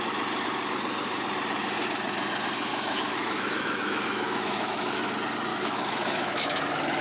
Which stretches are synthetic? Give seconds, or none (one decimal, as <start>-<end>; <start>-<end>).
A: 2.7-5.1; 5.5-6.6

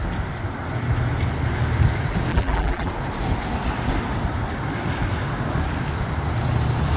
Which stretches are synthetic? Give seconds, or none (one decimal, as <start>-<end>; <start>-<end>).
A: 2.3-2.9

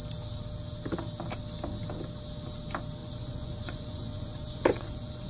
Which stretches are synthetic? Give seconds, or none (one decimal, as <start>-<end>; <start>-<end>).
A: 3.0-5.3

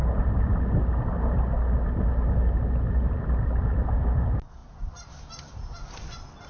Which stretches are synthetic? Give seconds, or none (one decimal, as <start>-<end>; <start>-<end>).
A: none

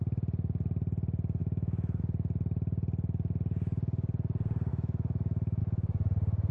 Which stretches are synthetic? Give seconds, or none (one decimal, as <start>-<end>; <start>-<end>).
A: 1.4-2.0; 4.7-5.6

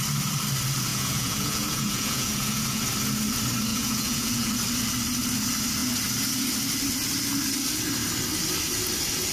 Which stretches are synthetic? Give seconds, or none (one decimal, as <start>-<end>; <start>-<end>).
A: 0.9-2.8; 3.7-4.5

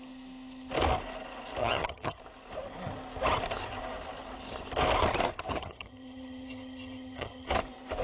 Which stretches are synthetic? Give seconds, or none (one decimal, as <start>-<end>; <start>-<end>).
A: 1.6-2.2; 5.5-7.5